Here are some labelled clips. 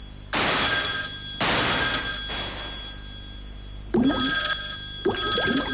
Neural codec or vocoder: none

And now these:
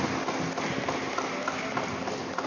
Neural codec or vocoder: none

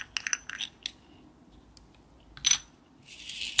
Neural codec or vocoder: none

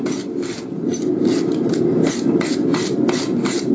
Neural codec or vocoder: none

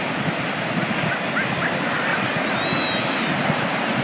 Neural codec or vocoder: none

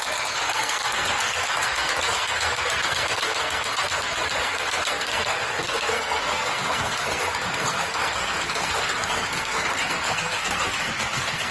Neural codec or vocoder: codec, SNAC